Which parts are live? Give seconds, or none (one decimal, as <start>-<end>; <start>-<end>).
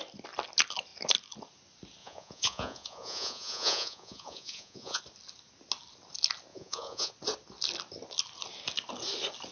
0.0-2.0; 5.0-6.5; 7.1-9.5